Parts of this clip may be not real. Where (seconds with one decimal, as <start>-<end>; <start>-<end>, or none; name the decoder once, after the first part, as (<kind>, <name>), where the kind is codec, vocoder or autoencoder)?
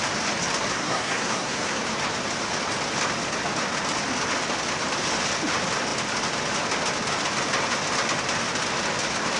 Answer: 0.7-1.8 (codec, SNAC)